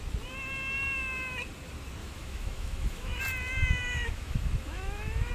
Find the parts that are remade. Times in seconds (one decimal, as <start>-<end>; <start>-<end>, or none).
2.0-3.2; 3.8-5.3